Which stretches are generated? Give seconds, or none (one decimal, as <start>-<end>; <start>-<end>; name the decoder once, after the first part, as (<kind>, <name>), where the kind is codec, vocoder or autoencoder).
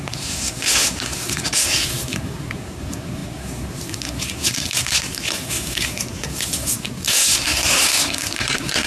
0.0-8.9 (codec, SNAC)